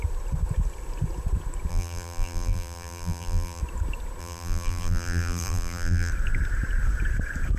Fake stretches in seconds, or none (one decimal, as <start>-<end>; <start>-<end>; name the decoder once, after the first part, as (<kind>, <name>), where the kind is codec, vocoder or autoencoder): 1.7-3.6 (vocoder, BigVGAN v2); 4.2-6.1